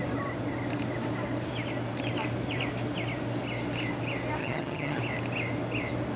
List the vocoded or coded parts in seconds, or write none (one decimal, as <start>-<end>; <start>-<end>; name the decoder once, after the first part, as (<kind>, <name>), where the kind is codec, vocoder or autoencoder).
4.4-5.0 (vocoder, HiFi-GAN)